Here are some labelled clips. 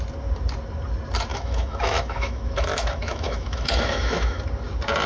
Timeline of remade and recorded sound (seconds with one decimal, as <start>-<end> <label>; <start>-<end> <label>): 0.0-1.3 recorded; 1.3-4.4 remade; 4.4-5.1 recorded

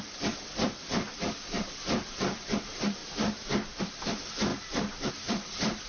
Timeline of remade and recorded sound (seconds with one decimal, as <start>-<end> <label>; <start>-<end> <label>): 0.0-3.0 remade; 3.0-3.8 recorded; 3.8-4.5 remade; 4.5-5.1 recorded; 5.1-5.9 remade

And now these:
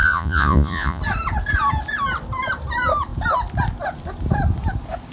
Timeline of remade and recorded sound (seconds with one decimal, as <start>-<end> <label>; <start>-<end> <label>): 0.0-1.0 remade; 1.0-5.1 recorded